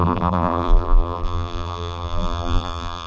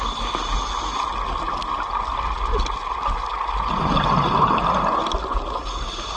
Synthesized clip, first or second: first